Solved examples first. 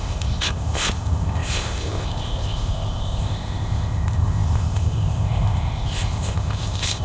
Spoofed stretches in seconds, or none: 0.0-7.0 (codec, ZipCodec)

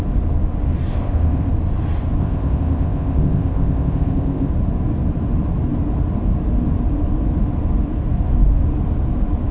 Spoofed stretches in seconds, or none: 0.9-1.5 (codec, ZipCodec); 2.2-4.5